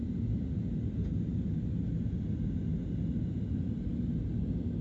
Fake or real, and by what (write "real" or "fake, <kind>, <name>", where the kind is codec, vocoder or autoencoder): real